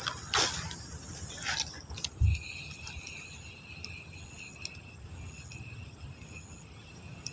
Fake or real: real